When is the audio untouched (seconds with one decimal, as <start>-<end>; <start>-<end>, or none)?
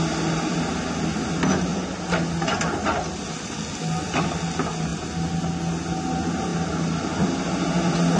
0.0-8.2